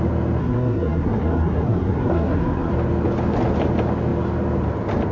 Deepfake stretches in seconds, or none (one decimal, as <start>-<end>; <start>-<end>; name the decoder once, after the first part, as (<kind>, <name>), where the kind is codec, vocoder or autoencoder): 0.4-2.7 (codec, SNAC)